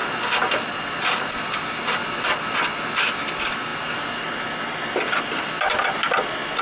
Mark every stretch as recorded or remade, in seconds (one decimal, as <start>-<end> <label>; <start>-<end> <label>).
0.0-6.6 recorded